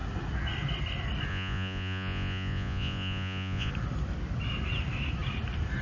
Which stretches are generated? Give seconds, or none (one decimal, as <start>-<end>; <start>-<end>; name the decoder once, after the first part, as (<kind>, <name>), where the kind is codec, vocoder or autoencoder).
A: 1.3-3.7 (vocoder, Vocos)